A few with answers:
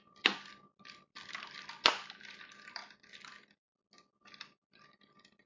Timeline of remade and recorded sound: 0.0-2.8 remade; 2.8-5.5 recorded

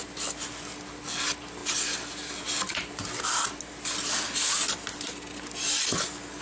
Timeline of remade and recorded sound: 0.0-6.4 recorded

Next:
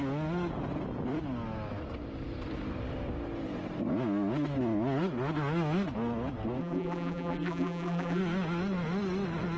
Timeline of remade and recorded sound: 0.0-6.6 recorded; 6.6-8.2 remade; 8.2-9.6 recorded

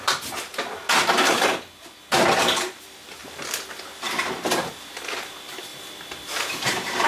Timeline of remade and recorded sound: 0.0-0.5 remade; 0.5-2.1 recorded; 2.1-3.2 remade; 3.2-4.0 recorded; 4.0-5.7 remade; 5.7-6.5 recorded; 6.5-7.1 remade

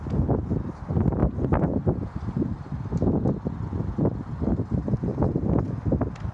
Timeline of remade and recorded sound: 0.0-1.2 recorded; 1.2-2.9 remade; 2.9-5.1 recorded; 5.1-5.7 remade; 5.7-6.3 recorded

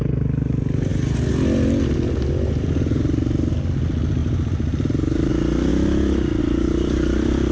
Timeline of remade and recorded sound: 0.0-4.2 recorded; 4.2-5.3 remade; 5.3-7.5 recorded